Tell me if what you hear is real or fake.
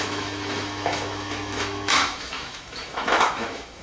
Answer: fake